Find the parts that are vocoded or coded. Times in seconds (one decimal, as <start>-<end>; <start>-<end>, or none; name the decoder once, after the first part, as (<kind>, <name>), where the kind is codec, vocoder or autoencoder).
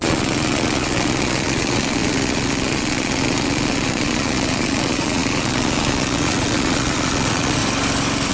0.0-7.6 (vocoder, Vocos)